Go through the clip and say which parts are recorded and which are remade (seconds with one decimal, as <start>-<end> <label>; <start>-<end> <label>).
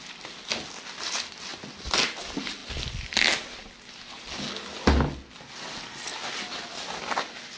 0.0-7.6 recorded